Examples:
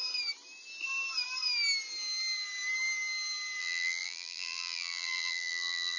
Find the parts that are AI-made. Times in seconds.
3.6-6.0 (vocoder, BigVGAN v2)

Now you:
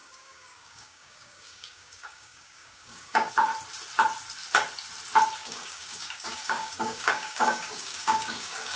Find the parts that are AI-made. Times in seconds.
0.0-3.3 (codec, DAC); 5.4-8.8

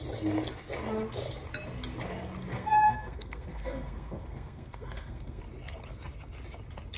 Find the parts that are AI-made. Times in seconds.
2.5-5.4 (codec, SNAC)